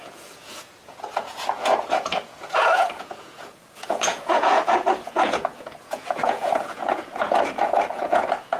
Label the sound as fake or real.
fake